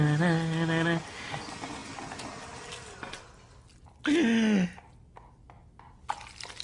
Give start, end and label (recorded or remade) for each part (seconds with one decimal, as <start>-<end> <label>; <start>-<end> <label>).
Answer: 0.0-6.6 recorded